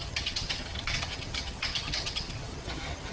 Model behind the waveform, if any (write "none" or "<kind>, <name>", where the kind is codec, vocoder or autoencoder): vocoder, HiFi-GAN